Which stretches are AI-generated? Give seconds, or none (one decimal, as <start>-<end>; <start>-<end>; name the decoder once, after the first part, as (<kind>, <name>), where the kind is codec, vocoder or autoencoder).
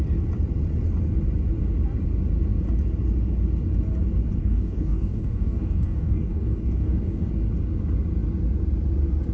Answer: 4.4-7.3 (codec, DAC)